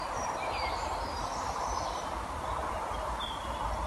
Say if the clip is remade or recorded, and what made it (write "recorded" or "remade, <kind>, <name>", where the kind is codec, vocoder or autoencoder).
remade, vocoder, BigVGAN v2